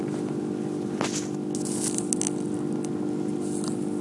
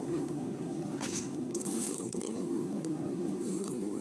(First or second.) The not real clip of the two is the second